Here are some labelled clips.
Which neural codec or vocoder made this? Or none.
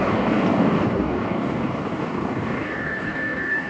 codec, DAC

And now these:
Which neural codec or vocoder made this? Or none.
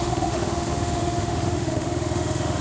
autoencoder, DAC-VAE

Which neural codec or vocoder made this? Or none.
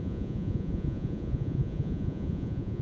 vocoder, Vocos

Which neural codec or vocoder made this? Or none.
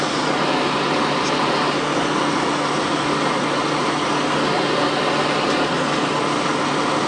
none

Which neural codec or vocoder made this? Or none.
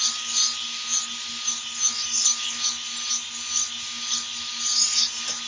none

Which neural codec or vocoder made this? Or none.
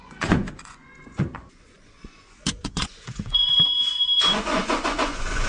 vocoder, Vocos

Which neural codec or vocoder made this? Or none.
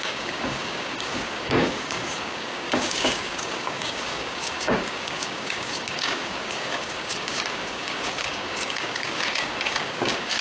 codec, DAC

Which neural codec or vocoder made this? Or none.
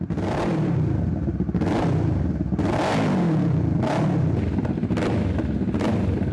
none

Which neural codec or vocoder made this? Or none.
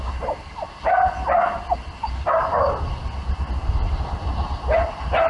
none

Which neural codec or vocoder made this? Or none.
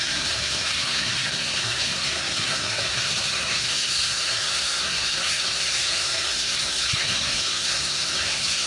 codec, SNAC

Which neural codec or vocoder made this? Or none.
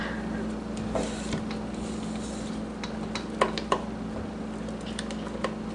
none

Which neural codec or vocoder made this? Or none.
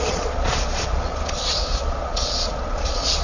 vocoder, Vocos